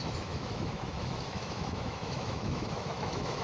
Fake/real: fake